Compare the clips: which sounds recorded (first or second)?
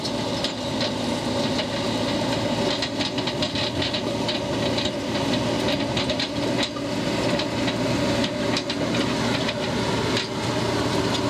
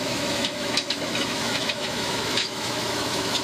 first